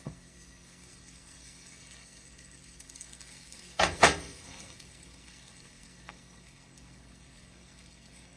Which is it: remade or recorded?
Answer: remade